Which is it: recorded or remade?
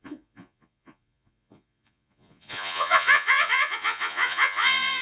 remade